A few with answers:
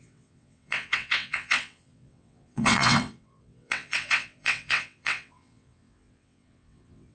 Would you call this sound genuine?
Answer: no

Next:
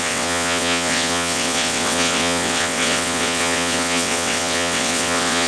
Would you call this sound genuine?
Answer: no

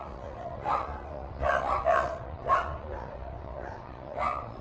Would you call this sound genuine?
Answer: no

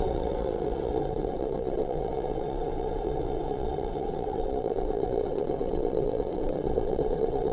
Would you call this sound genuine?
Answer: no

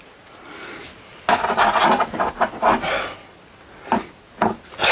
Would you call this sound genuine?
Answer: yes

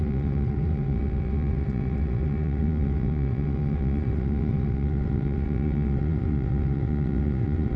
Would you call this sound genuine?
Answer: no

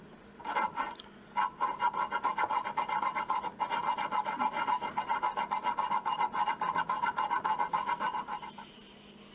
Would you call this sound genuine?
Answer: yes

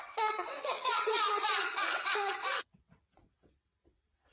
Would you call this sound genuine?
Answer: no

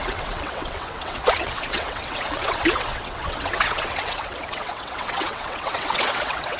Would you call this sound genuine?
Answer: no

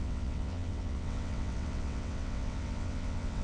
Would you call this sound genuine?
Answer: no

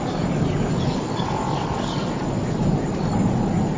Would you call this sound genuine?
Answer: yes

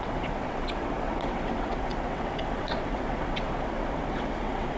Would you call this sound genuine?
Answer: no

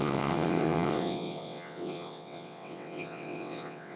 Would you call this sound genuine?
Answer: no